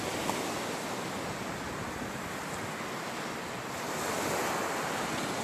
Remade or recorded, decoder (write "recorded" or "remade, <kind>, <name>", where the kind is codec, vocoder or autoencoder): recorded